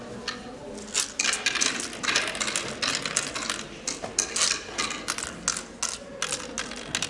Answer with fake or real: real